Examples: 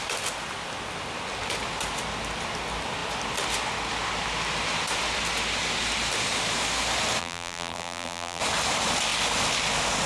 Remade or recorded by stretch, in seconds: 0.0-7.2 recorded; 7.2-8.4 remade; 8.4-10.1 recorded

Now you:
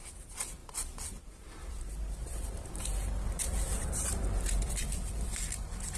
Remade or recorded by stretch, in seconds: 0.0-0.6 recorded; 0.6-4.2 remade; 4.2-6.0 recorded